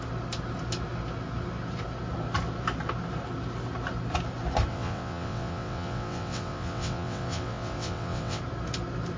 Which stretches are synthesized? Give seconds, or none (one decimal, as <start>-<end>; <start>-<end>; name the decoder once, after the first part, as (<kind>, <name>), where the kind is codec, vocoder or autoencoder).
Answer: 4.7-8.4 (vocoder, WaveNeXt)